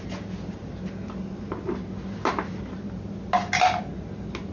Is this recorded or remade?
recorded